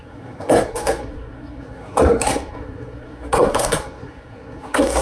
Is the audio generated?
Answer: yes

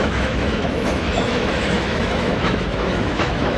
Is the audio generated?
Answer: yes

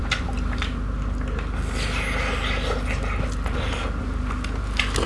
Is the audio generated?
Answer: no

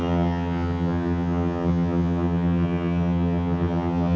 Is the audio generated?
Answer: yes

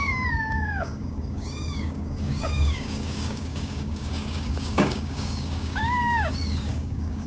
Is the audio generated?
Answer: yes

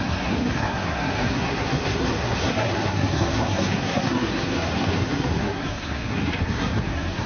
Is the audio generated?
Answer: yes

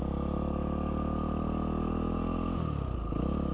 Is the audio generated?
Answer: no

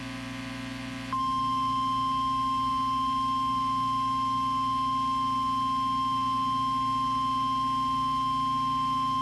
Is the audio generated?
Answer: no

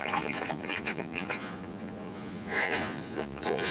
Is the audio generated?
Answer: yes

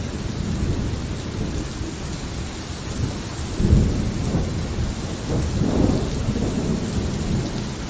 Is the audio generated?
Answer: no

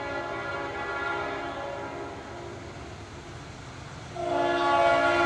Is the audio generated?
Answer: no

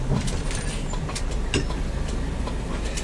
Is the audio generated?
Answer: no